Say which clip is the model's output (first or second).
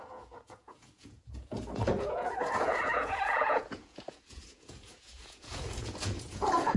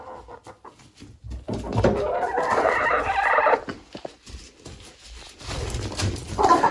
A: first